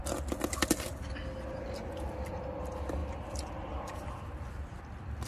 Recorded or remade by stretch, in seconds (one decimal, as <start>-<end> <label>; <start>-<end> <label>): 0.0-5.3 recorded